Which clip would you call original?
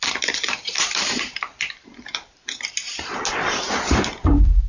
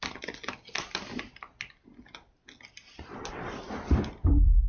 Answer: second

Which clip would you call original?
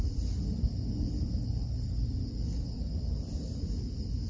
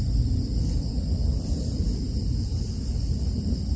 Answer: first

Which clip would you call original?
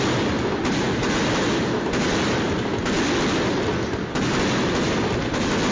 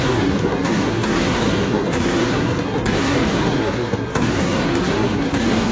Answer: first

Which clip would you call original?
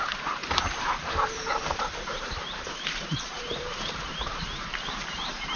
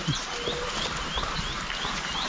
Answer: second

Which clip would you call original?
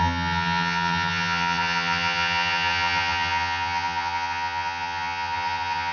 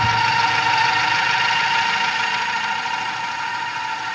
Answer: second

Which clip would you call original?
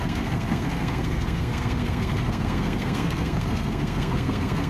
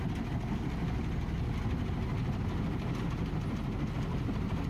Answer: second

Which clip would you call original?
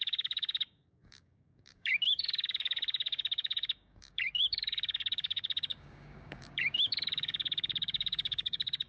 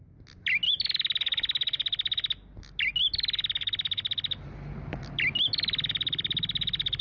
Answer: second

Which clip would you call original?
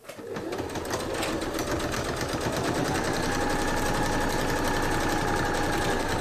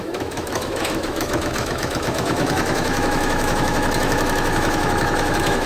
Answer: first